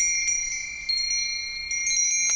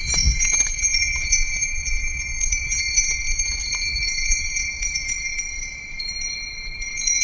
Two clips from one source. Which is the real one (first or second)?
first